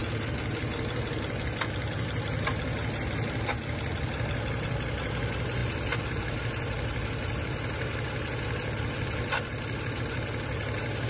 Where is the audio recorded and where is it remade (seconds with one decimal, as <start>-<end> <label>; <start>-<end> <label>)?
0.0-11.1 recorded